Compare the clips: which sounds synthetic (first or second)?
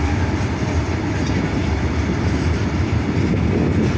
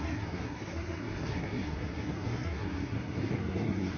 second